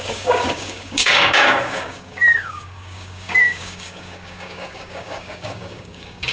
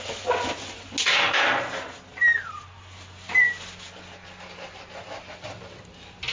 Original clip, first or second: second